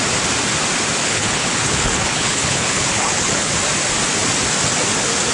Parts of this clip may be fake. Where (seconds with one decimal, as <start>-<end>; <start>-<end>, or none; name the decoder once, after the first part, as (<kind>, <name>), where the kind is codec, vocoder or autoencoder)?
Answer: 1.0-3.5 (codec, HILCodec)